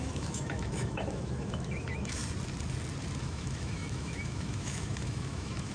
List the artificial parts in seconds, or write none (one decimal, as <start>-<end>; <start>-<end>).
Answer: 0.0-2.2; 3.2-5.7